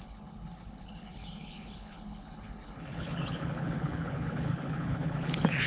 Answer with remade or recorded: remade